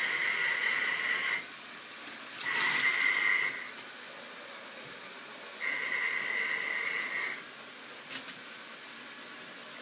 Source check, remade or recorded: recorded